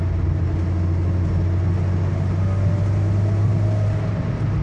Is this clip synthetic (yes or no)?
no